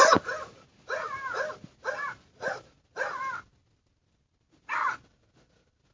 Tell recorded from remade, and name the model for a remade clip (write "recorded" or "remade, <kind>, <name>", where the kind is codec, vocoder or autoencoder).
recorded